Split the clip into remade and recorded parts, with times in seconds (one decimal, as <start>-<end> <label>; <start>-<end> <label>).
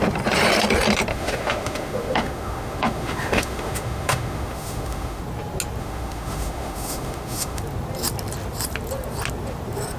0.0-1.1 recorded; 1.1-5.2 remade; 5.2-5.8 recorded; 5.8-7.6 remade; 7.6-10.0 recorded